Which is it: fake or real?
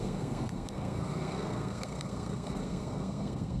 fake